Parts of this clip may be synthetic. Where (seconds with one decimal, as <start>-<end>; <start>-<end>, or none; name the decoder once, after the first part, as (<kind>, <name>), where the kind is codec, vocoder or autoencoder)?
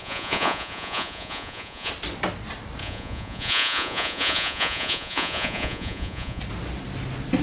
0.0-1.9 (vocoder, Vocos); 2.8-6.4